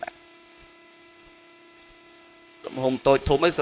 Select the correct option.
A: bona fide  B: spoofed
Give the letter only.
B